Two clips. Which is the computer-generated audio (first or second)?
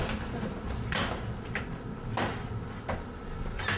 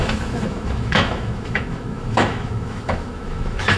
second